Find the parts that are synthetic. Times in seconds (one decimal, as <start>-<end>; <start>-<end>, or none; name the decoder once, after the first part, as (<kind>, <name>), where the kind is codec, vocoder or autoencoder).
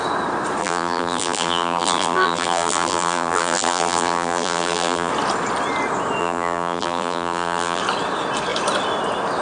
0.6-5.1 (vocoder, BigVGAN v2); 6.2-7.8